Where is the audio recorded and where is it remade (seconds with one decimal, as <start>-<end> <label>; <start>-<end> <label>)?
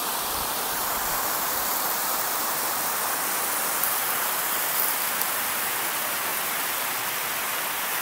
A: 0.0-8.0 recorded